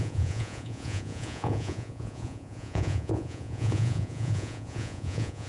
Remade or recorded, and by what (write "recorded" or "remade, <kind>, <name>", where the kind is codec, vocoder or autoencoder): remade, vocoder, Vocos